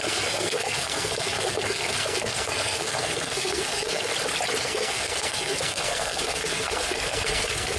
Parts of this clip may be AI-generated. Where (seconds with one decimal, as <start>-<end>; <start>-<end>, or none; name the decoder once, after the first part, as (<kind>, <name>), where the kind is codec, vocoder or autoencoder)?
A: 0.0-4.1 (codec, SNAC); 4.6-7.8